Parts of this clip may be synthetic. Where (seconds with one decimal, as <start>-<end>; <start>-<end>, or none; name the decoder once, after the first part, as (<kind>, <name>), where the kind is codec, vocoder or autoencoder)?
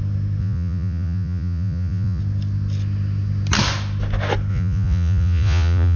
0.4-2.2 (vocoder, Vocos); 4.5-6.0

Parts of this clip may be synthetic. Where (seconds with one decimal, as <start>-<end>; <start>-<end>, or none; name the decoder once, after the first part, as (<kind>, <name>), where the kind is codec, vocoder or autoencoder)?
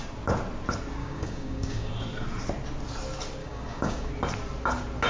1.0-1.9 (codec, DAC); 3.4-4.1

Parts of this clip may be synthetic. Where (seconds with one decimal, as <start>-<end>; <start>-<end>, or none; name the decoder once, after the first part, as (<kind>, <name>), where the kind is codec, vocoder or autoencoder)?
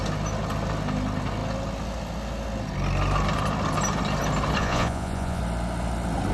4.6-5.4 (vocoder, Vocos)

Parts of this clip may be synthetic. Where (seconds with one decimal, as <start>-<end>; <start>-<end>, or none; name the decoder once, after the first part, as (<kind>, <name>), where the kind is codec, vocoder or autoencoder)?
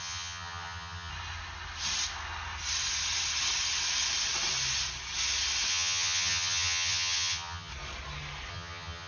0.0-1.1 (vocoder, HiFi-GAN); 5.7-7.7; 8.5-9.1